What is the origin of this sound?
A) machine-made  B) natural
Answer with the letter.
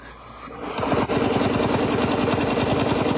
B